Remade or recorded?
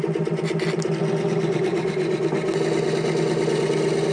recorded